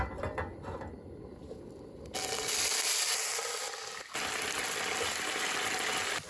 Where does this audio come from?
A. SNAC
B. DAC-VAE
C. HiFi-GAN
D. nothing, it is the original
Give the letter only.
D